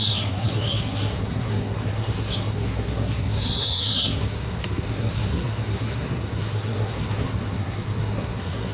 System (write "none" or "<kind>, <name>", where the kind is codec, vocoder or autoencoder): codec, SNAC